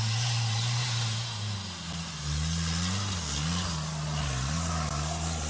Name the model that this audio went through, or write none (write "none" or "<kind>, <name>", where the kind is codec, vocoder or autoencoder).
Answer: none